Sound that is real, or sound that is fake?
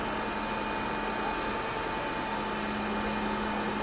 real